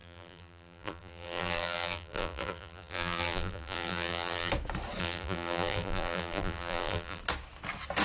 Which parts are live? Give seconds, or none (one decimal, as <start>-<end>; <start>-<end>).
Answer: 4.5-5.0; 7.2-8.0